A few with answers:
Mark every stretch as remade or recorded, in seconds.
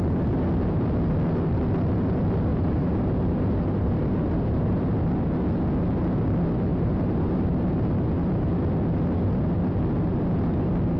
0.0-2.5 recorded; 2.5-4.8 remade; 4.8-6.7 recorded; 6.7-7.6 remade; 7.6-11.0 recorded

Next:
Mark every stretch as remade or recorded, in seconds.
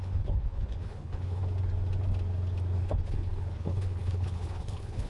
0.0-1.4 remade; 1.4-2.8 recorded; 2.8-5.1 remade